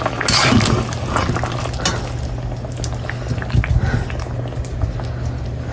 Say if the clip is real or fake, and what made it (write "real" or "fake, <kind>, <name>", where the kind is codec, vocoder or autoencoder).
real